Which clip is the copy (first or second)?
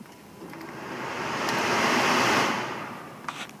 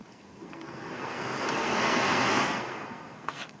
second